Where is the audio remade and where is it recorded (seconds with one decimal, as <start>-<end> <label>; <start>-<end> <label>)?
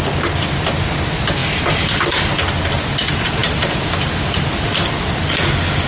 0.0-5.9 recorded